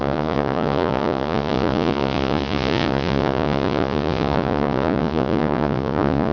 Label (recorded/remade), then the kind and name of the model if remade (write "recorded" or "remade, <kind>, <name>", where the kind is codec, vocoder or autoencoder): remade, vocoder, Vocos